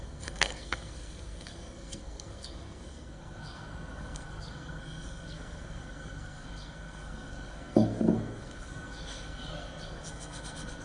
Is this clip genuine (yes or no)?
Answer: no